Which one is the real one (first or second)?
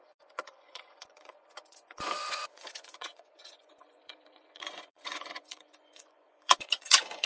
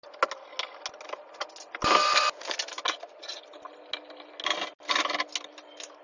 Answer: second